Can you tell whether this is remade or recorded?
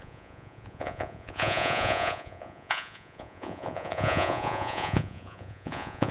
remade